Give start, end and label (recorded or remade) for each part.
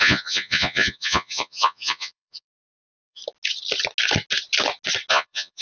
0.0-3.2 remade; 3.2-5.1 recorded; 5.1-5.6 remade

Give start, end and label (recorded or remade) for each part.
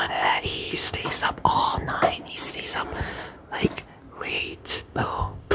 0.0-1.0 remade; 1.0-4.3 recorded; 4.3-5.5 remade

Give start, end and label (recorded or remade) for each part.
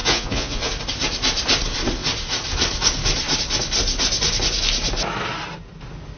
0.0-0.7 remade; 0.7-6.2 recorded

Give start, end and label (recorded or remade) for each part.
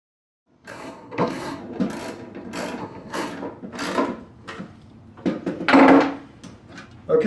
0.0-0.7 recorded; 0.7-1.6 remade; 1.6-2.8 recorded; 2.8-3.3 remade; 3.3-7.3 recorded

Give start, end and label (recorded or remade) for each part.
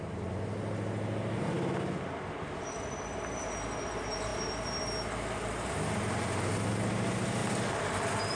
0.0-8.4 recorded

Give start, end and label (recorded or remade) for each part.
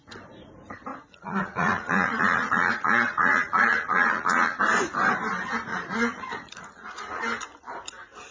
0.0-0.9 recorded; 0.9-4.6 remade; 4.6-5.7 recorded; 5.7-7.2 remade; 7.2-8.3 recorded